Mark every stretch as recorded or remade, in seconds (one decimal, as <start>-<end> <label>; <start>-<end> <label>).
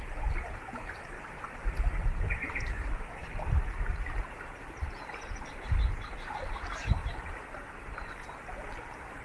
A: 0.0-9.2 recorded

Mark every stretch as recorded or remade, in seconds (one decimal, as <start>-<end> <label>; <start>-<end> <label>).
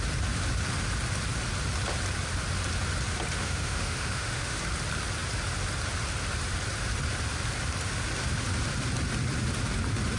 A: 0.0-3.4 recorded; 3.4-4.6 remade; 4.6-10.2 recorded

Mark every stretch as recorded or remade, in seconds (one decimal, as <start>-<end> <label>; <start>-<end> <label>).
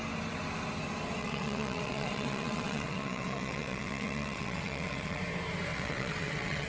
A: 0.0-1.2 recorded; 1.2-5.2 remade; 5.2-5.7 recorded; 5.7-6.7 remade